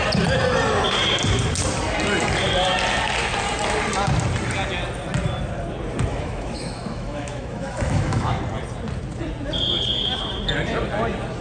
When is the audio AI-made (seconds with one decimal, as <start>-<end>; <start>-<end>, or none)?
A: 6.1-8.4